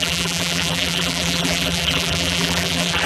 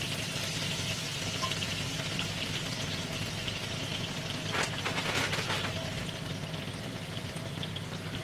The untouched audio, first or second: second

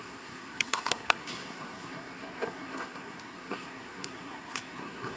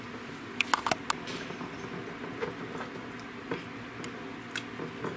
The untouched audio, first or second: second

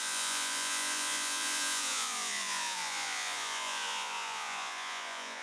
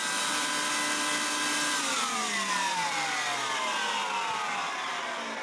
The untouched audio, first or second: second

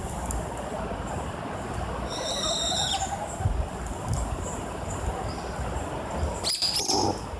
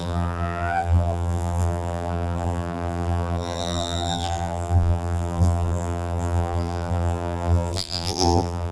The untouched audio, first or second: first